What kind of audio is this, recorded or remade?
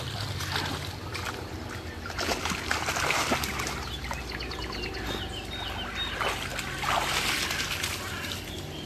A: recorded